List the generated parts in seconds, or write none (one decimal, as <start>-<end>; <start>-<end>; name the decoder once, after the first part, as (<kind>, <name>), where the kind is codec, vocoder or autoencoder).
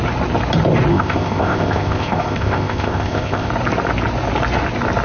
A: 0.9-3.5 (codec, ZipCodec)